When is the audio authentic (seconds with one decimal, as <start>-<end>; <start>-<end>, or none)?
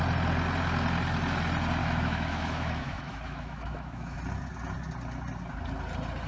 0.0-1.8; 4.2-6.3